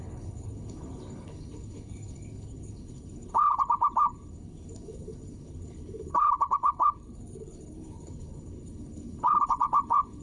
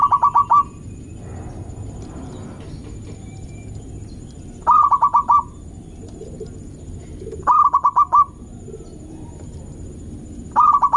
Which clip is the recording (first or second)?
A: second